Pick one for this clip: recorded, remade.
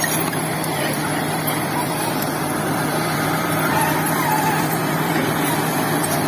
remade